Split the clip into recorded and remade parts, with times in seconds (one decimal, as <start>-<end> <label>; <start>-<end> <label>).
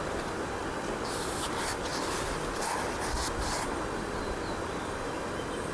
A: 0.0-5.7 recorded